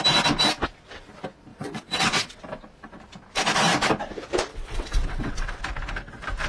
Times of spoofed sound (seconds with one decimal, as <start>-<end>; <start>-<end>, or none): 1.5-2.4; 4.5-5.6